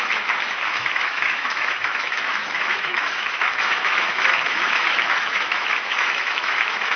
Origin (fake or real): fake